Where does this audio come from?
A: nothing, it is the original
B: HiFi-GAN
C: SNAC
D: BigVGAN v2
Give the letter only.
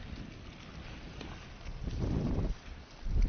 A